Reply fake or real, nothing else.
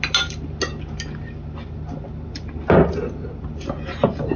real